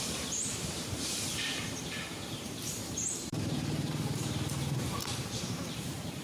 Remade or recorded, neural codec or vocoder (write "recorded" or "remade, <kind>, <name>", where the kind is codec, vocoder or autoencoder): remade, vocoder, BigVGAN v2